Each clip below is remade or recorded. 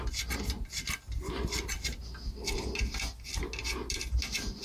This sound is recorded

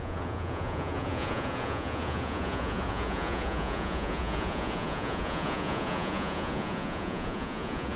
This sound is remade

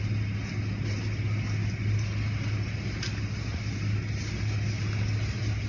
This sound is recorded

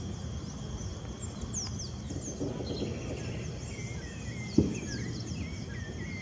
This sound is recorded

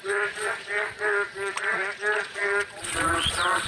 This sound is remade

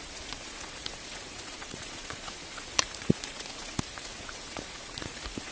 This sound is remade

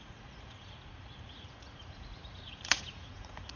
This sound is remade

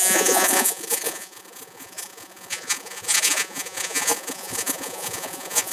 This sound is remade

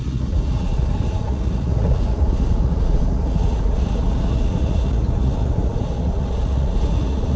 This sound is remade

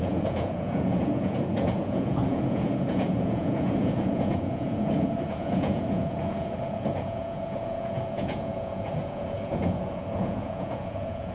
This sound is remade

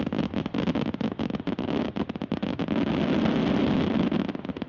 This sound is recorded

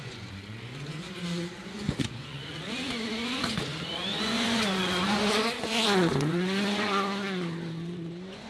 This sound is remade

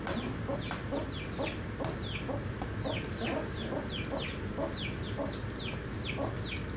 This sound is recorded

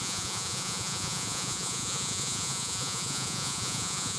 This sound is remade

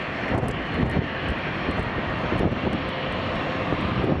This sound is recorded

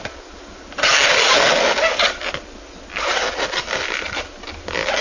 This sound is recorded